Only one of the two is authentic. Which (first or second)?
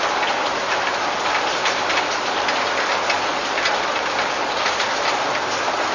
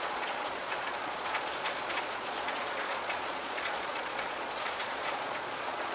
first